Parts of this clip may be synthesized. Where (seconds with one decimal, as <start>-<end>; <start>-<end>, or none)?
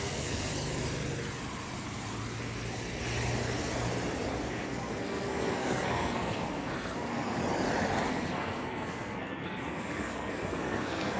0.0-0.5; 4.5-7.4; 8.1-11.2